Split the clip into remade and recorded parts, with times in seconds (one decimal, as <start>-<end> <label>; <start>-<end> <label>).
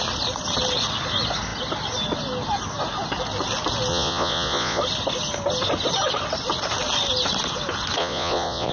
0.0-3.9 recorded; 3.9-4.8 remade; 4.8-8.0 recorded; 8.0-8.7 remade